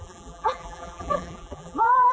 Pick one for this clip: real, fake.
fake